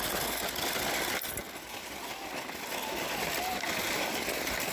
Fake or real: real